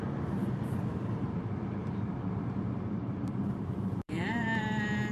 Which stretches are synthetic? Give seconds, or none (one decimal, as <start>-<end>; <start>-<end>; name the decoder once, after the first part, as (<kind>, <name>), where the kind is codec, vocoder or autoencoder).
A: 1.8-5.1 (vocoder, BigVGAN v2)